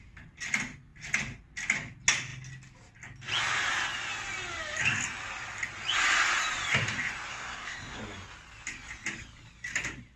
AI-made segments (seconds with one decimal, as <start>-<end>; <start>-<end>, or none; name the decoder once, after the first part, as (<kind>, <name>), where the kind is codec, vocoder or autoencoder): 7.3-8.0 (codec, SNAC)